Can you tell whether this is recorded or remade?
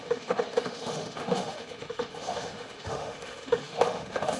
remade